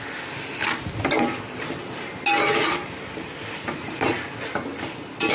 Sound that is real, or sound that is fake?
real